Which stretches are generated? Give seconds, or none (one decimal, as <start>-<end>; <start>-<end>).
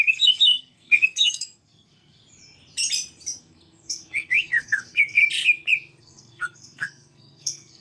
0.0-2.2; 3.4-5.2; 6.0-7.8